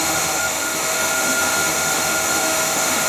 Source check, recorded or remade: remade